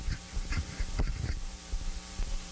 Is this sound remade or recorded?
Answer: remade